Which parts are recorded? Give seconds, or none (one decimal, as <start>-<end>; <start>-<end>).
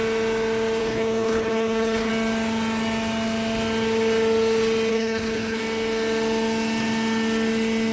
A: 0.0-0.8; 2.1-4.9; 5.6-7.9